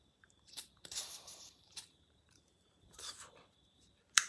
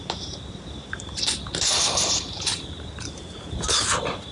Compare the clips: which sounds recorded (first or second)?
second